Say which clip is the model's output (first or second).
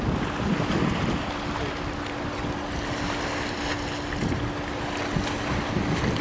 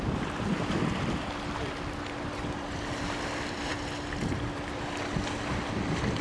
second